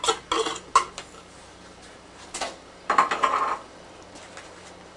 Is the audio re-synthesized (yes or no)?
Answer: no